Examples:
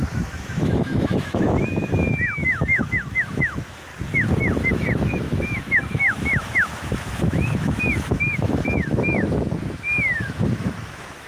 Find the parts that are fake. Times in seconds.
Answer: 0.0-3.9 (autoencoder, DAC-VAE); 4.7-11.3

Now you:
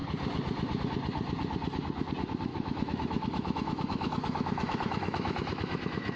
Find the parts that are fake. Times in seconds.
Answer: 2.5-6.2 (autoencoder, DAC-VAE)

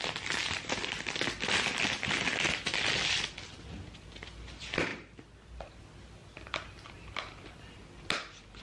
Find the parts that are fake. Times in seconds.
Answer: 0.4-2.7 (vocoder, BigVGAN v2); 6.2-7.7

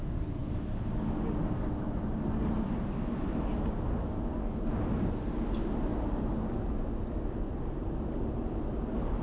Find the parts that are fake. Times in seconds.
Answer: none

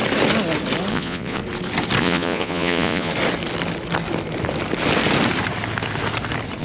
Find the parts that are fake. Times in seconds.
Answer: 0.9-1.4 (vocoder, Vocos); 2.0-3.1

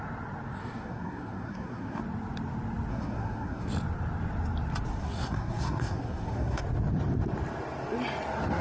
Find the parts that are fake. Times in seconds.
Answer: 0.6-2.0 (codec, SNAC); 2.9-3.7; 5.0-6.6

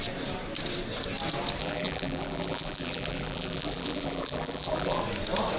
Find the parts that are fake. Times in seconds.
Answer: 1.6-5.0 (vocoder, BigVGAN v2)